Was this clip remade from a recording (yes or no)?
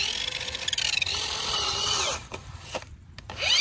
no